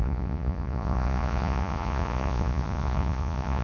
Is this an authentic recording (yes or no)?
no